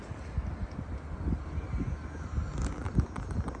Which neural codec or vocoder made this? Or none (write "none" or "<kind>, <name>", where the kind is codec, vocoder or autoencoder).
none